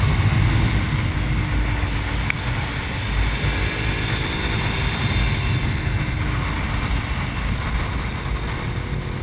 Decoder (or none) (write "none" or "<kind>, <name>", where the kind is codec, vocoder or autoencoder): none